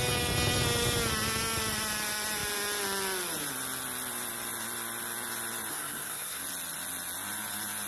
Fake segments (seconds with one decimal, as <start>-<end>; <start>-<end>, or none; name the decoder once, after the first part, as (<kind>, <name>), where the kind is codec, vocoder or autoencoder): 5.7-6.4 (codec, SNAC)